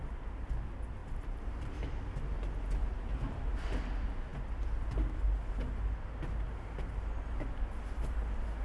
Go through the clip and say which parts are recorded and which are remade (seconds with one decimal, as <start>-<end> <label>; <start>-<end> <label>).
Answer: 0.0-8.6 recorded